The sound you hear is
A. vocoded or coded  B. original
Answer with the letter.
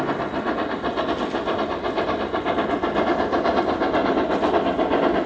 B